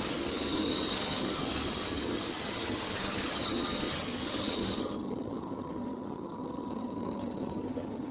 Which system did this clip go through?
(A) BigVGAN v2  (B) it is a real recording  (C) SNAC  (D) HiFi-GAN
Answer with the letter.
D